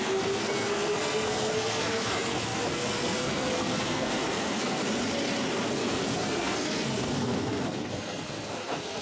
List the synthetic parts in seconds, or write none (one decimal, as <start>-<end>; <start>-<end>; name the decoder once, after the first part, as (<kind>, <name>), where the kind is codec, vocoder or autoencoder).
0.0-4.8 (codec, SNAC); 5.7-9.0